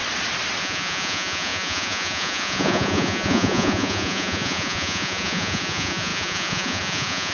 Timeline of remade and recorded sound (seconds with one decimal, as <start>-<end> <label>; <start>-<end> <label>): 0.0-0.6 recorded; 0.6-7.3 remade